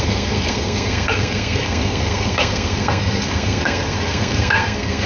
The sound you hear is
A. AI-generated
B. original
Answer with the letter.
A